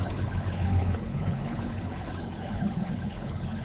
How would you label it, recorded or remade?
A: remade